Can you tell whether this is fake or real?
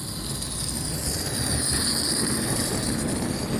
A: real